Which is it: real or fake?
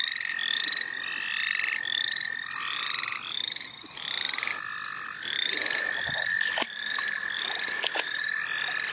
real